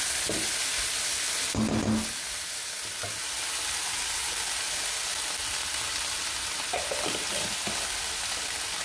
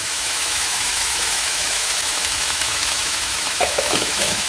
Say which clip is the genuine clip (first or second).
first